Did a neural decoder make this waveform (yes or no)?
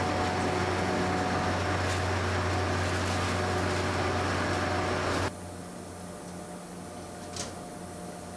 no